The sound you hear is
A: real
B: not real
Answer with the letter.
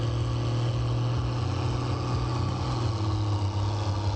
A